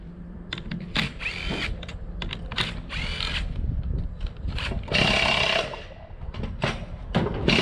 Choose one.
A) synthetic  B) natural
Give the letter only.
B